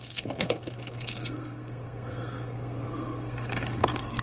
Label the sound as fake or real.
fake